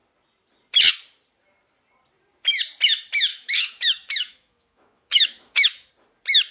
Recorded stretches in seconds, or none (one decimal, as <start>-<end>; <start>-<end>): 0.0-3.3; 5.9-6.5